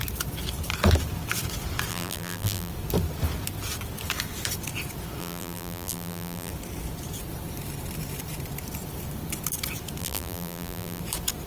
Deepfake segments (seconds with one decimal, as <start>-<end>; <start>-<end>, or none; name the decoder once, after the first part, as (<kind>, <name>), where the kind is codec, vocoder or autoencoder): 1.9-2.7 (vocoder, BigVGAN v2); 5.2-6.5; 10.0-11.0